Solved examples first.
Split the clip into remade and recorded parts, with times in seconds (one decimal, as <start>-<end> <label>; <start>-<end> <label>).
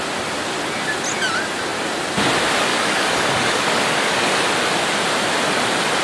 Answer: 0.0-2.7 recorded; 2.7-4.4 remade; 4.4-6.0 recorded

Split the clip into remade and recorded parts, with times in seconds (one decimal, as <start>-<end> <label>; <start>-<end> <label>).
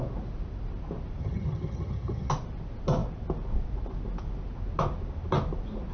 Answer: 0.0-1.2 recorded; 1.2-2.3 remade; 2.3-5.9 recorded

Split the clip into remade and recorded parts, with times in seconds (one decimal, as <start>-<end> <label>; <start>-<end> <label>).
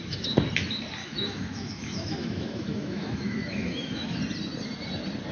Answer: 0.0-1.0 recorded; 1.0-4.2 remade; 4.2-5.3 recorded